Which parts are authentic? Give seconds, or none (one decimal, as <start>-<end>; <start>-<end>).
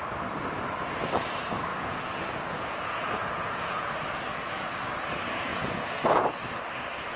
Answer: 0.0-1.7; 3.9-4.3; 4.9-5.5; 6.4-7.2